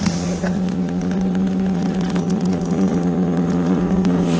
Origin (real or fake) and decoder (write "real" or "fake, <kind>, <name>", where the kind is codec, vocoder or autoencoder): fake, vocoder, Vocos